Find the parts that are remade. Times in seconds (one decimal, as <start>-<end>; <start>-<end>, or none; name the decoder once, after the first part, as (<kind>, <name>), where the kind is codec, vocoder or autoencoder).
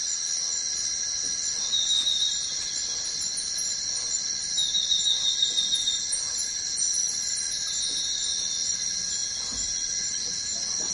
none